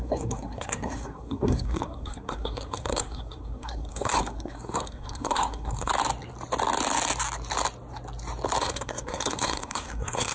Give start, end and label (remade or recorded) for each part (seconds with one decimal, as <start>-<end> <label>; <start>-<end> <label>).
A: 0.0-5.9 remade; 5.9-8.6 recorded; 8.6-10.3 remade